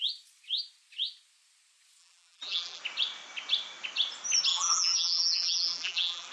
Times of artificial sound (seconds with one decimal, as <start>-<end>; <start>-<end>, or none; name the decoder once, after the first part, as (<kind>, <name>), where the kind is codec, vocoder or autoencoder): 2.0-2.8 (vocoder, BigVGAN v2); 4.5-6.3